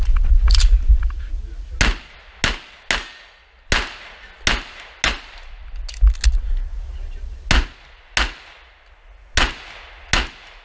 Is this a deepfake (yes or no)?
no